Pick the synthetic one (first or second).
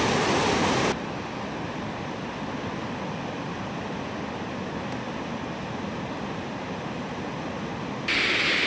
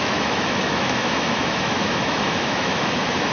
second